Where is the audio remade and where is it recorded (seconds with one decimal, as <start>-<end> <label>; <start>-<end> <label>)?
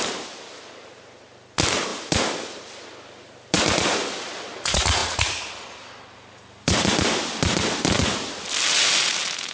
0.0-9.5 recorded